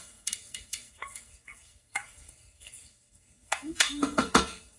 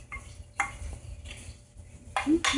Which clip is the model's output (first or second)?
first